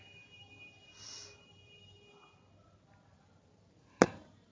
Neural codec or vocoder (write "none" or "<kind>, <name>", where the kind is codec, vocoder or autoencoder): none